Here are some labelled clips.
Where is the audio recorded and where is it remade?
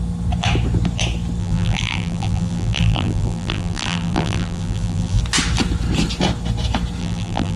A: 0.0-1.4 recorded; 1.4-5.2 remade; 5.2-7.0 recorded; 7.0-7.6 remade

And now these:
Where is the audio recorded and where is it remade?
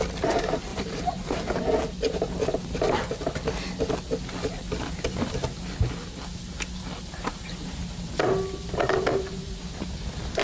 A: 0.0-0.7 recorded; 0.7-1.6 remade; 1.6-7.3 recorded; 7.3-8.1 remade; 8.1-10.4 recorded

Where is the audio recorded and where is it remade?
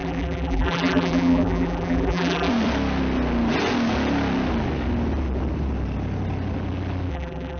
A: 0.0-2.5 remade; 2.5-7.1 recorded; 7.1-7.6 remade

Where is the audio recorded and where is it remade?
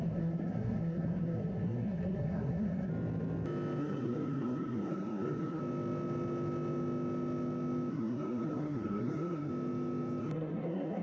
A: 0.0-2.9 remade; 2.9-3.8 recorded; 3.8-5.6 remade; 5.6-7.9 recorded; 7.9-9.5 remade; 9.5-10.2 recorded; 10.2-11.0 remade